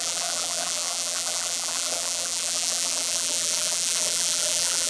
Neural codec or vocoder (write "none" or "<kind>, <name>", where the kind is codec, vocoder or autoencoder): vocoder, BigVGAN v2